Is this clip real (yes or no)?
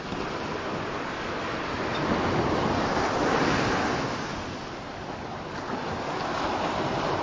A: yes